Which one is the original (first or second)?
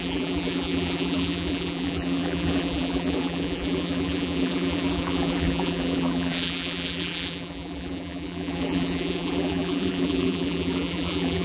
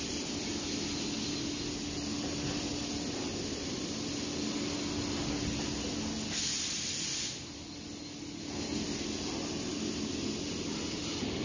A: second